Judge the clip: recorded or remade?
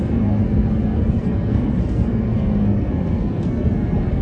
remade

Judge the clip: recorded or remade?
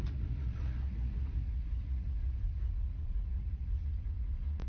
remade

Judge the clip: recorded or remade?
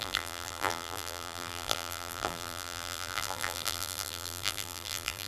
remade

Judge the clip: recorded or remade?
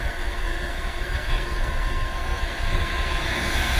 remade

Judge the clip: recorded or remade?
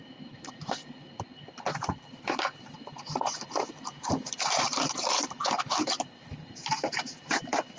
remade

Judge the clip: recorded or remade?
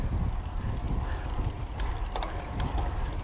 recorded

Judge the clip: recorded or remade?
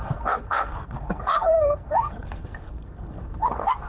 remade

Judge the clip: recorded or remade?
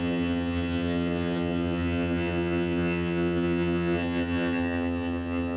remade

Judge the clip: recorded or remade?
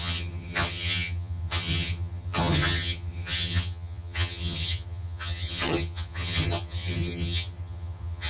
remade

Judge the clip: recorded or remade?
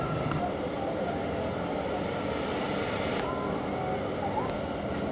recorded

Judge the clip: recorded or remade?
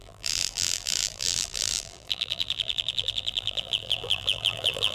remade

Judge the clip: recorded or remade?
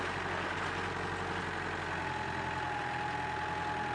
recorded